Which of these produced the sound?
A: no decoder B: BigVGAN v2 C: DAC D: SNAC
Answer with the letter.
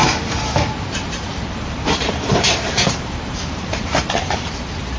B